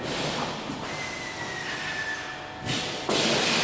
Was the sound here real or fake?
real